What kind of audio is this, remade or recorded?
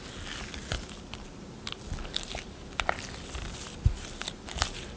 recorded